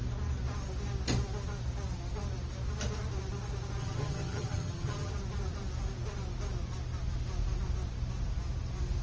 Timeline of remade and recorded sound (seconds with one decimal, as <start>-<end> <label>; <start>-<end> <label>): 0.0-3.8 recorded; 3.8-5.1 remade; 5.1-9.0 recorded